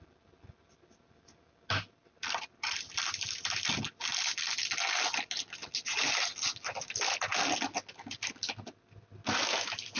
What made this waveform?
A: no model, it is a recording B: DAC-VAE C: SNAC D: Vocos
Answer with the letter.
A